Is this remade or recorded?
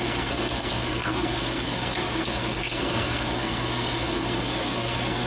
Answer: remade